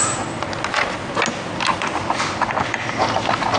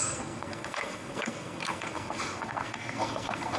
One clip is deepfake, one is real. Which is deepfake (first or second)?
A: second